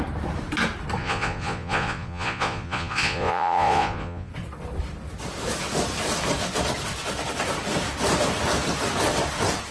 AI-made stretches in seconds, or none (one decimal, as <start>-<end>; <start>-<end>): 1.0-4.3

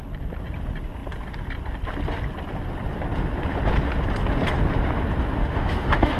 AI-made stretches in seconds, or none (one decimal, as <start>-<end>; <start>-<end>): 5.4-6.2

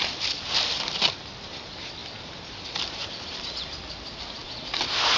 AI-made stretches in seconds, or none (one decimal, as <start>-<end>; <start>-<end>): 4.4-5.2

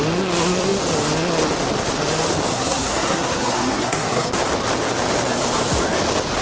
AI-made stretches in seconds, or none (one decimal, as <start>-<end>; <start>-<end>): 2.5-4.3